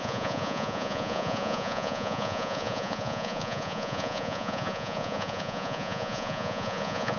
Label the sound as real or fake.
fake